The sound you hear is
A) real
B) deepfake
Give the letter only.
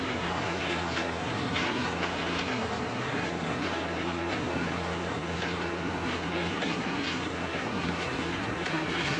B